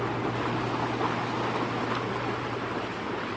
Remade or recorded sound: recorded